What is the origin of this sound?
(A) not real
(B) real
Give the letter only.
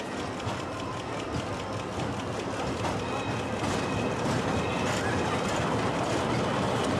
B